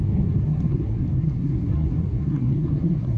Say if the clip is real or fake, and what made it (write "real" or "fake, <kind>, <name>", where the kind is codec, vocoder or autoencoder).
fake, codec, SNAC